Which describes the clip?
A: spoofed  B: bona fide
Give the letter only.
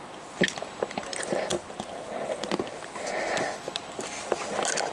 B